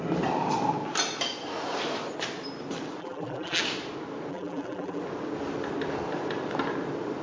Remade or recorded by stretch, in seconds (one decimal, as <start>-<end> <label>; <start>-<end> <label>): 0.0-3.0 recorded; 3.0-3.6 remade; 3.6-4.3 recorded; 4.3-5.0 remade; 5.0-7.2 recorded